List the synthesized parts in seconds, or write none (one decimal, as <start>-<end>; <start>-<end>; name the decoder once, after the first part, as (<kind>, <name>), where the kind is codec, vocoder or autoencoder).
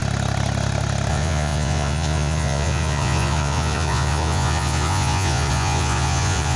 1.1-6.6 (vocoder, Vocos)